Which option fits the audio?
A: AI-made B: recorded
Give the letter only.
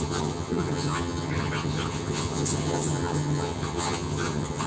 A